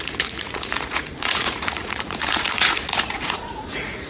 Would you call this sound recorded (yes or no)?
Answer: no